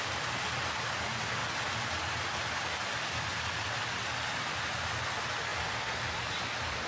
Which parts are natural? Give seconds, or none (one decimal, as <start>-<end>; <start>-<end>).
0.0-6.9